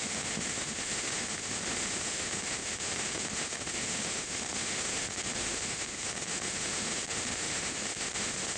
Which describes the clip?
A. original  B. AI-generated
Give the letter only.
B